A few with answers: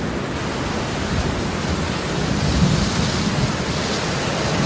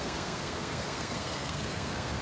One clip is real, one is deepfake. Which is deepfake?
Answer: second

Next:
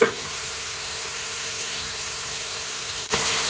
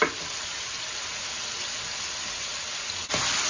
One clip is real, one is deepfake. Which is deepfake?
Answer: first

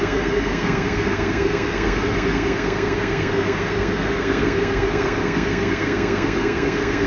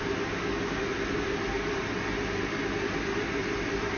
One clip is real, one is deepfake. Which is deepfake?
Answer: first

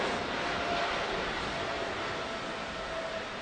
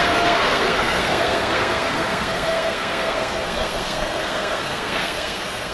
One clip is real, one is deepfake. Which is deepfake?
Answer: second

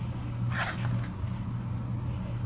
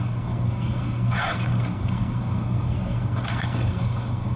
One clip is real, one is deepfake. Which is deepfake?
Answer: second